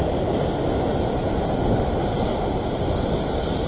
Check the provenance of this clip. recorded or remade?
recorded